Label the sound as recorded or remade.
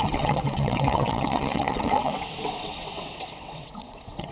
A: remade